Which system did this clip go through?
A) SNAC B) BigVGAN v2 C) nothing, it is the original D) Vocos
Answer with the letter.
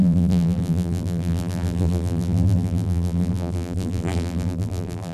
B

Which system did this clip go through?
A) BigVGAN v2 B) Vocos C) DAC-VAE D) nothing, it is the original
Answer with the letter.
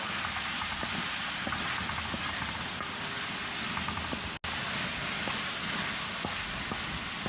D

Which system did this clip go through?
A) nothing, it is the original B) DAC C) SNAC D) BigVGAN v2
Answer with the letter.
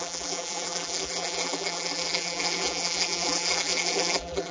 D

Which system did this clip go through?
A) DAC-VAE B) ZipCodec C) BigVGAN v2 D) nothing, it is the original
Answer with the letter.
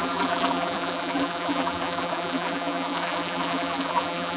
C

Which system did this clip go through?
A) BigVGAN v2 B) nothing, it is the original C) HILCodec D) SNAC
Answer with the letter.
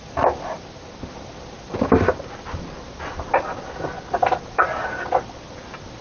B